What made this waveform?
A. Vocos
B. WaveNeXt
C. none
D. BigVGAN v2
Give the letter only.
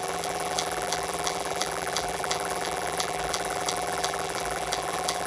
D